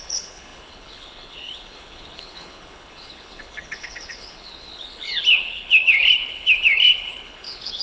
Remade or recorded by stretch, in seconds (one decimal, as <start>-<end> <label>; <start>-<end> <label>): 0.0-7.8 remade